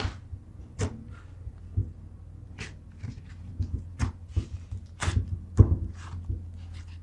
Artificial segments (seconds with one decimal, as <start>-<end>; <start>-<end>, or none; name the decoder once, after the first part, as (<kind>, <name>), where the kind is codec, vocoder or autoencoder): none